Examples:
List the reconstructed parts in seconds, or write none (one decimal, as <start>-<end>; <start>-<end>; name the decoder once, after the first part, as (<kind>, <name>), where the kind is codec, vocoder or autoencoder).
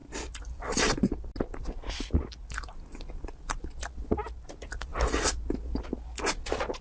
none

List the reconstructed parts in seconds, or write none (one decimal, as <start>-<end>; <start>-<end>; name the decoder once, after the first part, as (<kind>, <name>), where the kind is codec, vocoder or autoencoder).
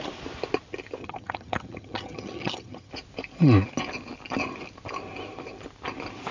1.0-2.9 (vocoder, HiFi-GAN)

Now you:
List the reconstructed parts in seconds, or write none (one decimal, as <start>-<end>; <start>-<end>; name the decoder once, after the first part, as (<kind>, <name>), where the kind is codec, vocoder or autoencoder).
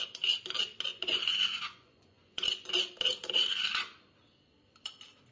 0.9-2.7 (vocoder, Vocos)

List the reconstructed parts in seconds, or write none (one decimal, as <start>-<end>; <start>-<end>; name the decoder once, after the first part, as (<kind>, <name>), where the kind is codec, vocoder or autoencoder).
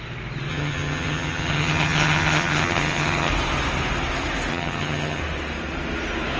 0.5-3.3 (vocoder, HiFi-GAN); 4.5-5.2